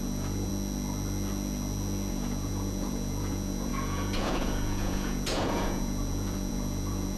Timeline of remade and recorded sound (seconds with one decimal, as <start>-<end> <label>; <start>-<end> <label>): 0.0-0.5 remade; 0.5-2.1 recorded; 2.1-7.2 remade